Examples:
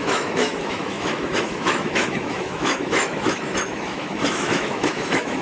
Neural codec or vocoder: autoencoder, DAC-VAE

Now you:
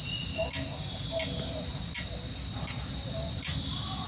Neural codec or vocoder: none